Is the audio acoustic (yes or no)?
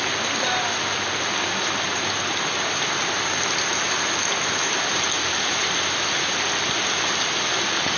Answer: yes